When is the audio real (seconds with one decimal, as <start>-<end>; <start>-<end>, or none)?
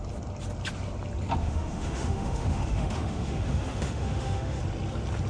0.0-1.4; 4.6-5.3